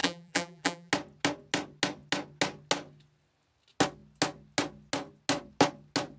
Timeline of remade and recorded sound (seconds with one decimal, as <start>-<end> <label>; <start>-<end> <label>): 0.0-0.9 remade; 0.9-6.2 recorded